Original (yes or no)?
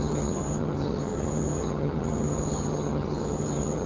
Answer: no